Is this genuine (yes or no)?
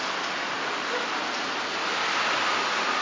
yes